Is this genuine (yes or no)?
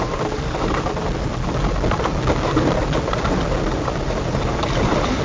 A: no